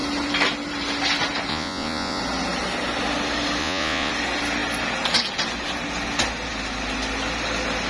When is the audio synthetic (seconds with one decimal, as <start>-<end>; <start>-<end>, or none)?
1.5-2.2; 3.6-4.1